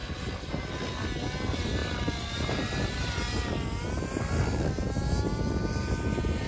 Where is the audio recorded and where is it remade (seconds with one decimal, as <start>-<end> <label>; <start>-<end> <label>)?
0.0-6.5 recorded